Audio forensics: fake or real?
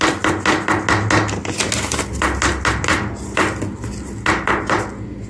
real